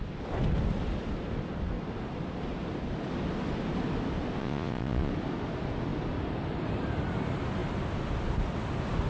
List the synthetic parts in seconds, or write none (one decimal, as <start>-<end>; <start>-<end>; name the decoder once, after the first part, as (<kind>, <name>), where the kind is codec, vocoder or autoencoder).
4.4-5.1 (vocoder, Vocos)